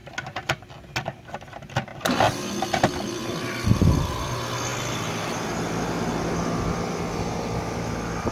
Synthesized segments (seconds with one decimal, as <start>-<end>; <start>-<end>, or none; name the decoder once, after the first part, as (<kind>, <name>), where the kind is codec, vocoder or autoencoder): none